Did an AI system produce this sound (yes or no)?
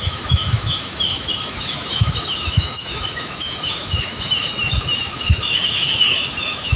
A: yes